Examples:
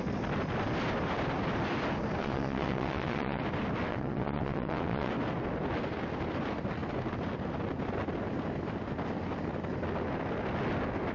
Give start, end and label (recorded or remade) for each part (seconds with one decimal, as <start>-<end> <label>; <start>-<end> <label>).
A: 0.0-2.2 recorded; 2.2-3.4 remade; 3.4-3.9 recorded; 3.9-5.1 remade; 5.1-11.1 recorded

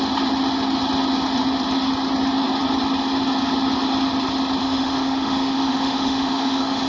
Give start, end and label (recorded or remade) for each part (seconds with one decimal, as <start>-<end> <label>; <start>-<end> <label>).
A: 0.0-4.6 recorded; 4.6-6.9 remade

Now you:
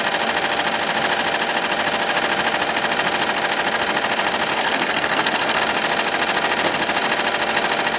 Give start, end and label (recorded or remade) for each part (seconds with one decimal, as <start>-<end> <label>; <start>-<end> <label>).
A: 0.0-4.5 recorded; 4.5-5.6 remade; 5.6-8.0 recorded